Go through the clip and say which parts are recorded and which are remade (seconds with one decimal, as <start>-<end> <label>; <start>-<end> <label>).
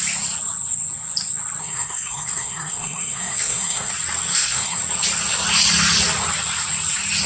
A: 0.0-1.6 recorded; 1.6-3.9 remade; 3.9-4.3 recorded; 4.3-4.8 remade; 4.8-7.3 recorded